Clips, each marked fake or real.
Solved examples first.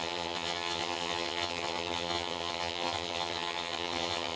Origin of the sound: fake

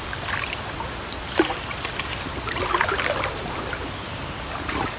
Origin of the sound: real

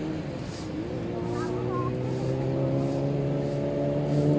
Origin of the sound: real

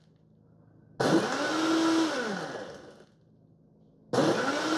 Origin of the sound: real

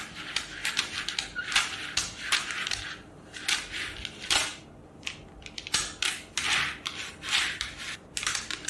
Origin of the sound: real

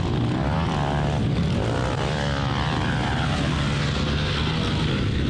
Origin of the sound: real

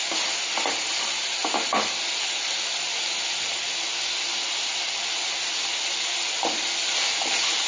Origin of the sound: real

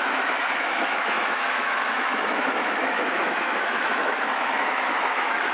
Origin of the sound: fake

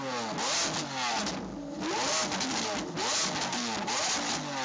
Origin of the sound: real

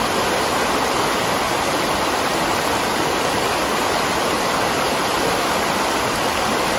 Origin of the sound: real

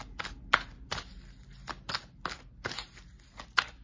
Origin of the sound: real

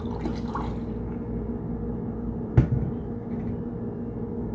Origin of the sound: real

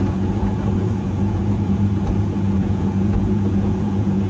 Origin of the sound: fake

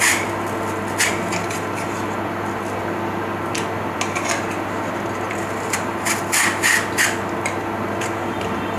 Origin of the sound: real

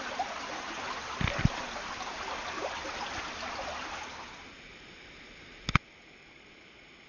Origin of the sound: real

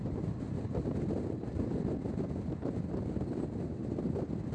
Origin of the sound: real